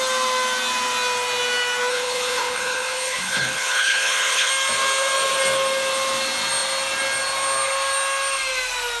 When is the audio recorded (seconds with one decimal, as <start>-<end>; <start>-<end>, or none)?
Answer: 0.0-1.9; 4.5-9.0